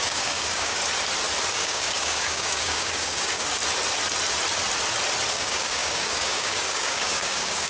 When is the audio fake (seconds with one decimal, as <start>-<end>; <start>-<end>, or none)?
0.0-0.8; 1.5-3.6; 5.3-7.7